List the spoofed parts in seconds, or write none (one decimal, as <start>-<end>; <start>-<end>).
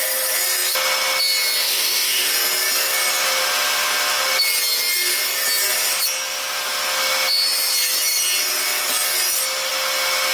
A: 1.6-2.3